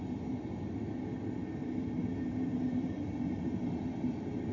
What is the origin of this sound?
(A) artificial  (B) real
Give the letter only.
B